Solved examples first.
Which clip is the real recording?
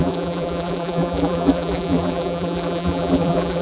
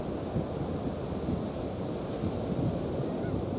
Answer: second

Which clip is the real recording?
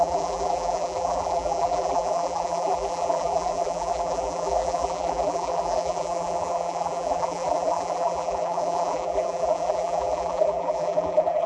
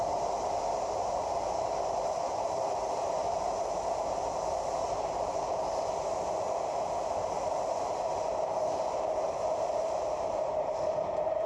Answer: second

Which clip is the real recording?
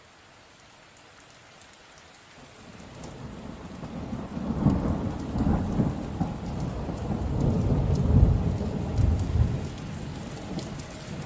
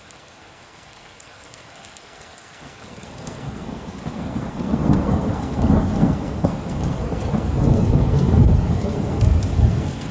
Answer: first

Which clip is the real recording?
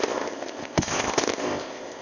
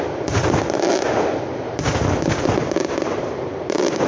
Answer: second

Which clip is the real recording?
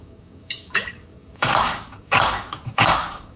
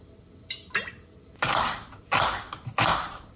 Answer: second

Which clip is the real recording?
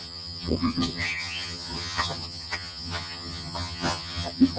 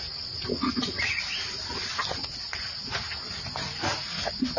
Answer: second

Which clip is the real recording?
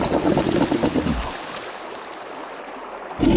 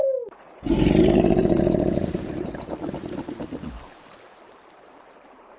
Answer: first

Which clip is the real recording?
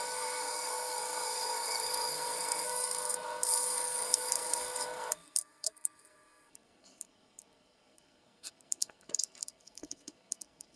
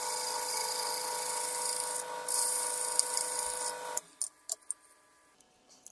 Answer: second